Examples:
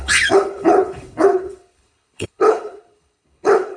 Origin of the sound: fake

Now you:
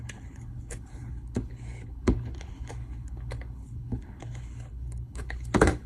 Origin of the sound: fake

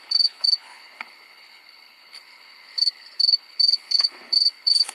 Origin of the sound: fake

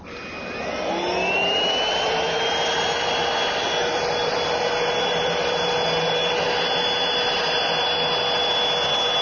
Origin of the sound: real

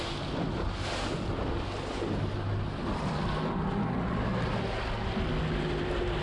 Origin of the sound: real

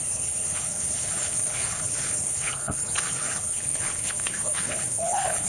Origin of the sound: fake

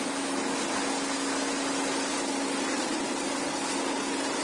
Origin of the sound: real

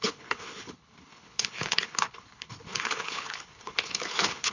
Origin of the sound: fake